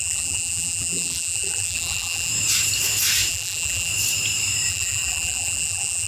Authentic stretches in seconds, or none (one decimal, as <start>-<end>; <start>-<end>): 2.3-3.3; 3.9-4.7